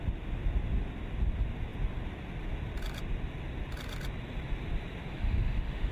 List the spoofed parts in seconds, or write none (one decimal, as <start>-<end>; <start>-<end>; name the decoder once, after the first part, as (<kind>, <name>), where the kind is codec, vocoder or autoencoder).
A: 5.1-5.9 (autoencoder, DAC-VAE)